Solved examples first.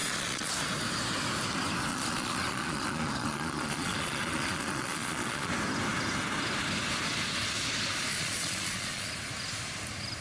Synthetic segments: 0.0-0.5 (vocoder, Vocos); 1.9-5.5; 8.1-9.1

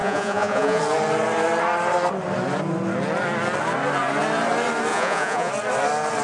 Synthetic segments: 0.0-0.8 (vocoder, Vocos); 4.9-5.5

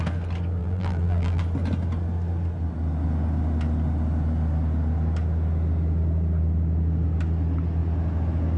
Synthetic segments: 0.6-1.4 (vocoder, BigVGAN v2)

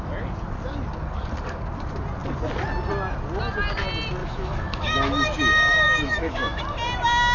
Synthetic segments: 4.2-6.6 (autoencoder, DAC-VAE)

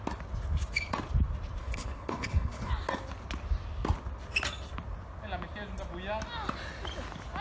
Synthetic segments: 1.6-2.7 (codec, HILCodec)

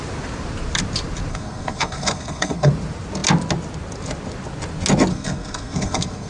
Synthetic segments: 1.3-2.7 (codec, SNAC); 5.1-6.3

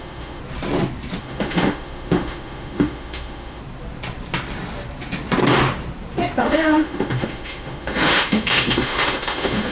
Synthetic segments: 0.0-0.4 (autoencoder, DAC-VAE); 1.2-3.6; 6.4-9.7